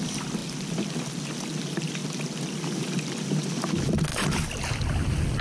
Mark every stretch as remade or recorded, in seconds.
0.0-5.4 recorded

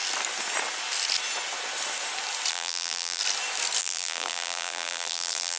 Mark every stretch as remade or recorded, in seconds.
0.0-2.5 recorded; 2.5-3.2 remade; 3.2-3.8 recorded; 3.8-5.6 remade

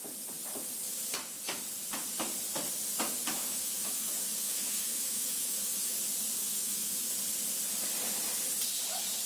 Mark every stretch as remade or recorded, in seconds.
0.0-3.2 recorded; 3.2-6.0 remade; 6.0-6.4 recorded; 6.4-7.1 remade; 7.1-9.3 recorded

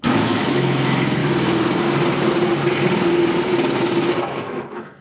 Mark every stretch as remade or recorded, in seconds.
0.0-1.2 remade; 1.2-4.2 recorded; 4.2-5.0 remade